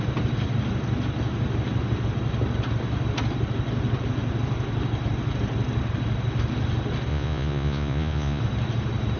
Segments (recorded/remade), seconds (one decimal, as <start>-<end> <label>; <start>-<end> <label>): 0.0-7.1 recorded; 7.1-8.4 remade; 8.4-9.2 recorded